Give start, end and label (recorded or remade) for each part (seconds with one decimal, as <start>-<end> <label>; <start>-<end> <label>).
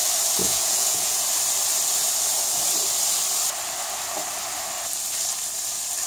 0.0-0.4 recorded; 0.4-1.2 remade; 1.2-6.1 recorded